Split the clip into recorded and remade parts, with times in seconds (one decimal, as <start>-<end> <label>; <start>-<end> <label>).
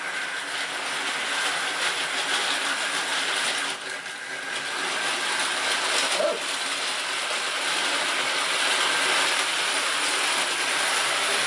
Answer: 0.0-11.5 recorded